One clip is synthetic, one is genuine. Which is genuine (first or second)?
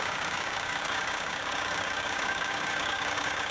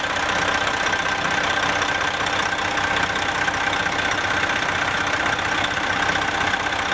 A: second